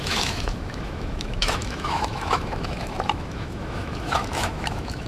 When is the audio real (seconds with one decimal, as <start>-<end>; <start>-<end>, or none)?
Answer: none